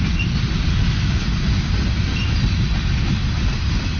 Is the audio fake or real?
real